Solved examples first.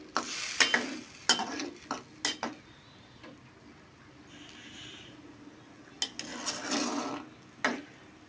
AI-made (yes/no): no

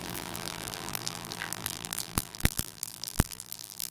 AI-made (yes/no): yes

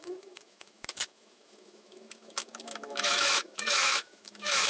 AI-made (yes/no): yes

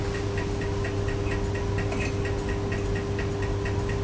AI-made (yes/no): no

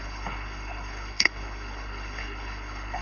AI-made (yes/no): yes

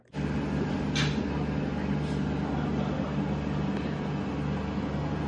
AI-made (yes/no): no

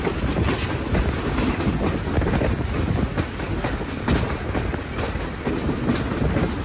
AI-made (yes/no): no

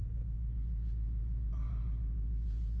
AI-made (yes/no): no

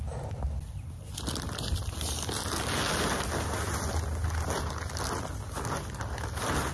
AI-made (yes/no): no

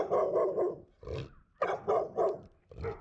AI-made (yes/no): no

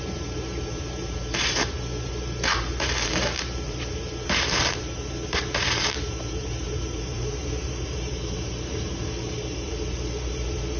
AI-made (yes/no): yes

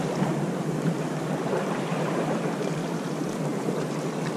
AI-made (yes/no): no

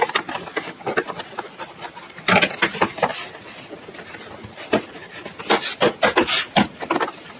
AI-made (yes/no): no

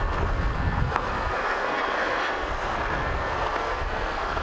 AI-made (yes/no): yes